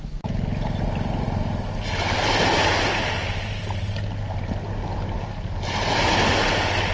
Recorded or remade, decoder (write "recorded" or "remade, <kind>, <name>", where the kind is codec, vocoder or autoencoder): recorded